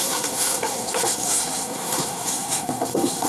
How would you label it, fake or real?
fake